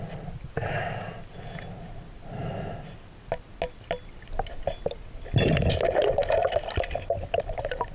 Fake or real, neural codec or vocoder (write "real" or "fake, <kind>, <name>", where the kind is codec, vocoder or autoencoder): real